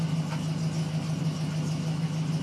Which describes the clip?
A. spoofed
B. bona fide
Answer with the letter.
B